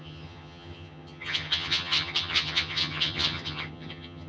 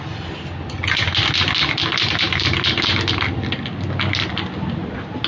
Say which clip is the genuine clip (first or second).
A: second